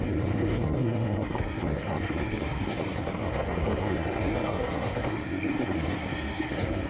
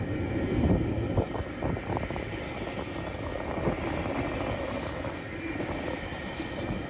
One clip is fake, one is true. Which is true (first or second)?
second